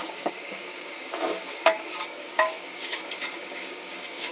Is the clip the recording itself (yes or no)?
no